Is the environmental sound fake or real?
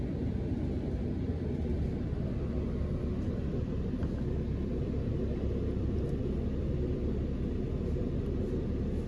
real